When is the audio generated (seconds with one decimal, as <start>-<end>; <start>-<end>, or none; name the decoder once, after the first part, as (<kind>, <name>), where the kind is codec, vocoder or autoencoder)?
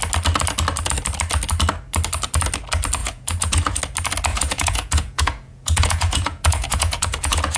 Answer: 3.0-3.8 (vocoder, Vocos); 4.3-7.6